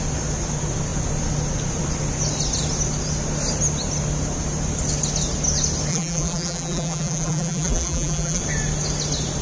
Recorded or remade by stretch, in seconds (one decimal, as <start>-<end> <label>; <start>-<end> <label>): 0.0-5.9 recorded; 5.9-8.4 remade; 8.4-9.4 recorded